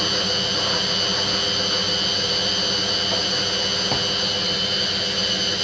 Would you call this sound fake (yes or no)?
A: no